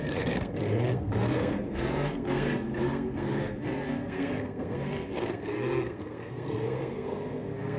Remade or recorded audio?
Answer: remade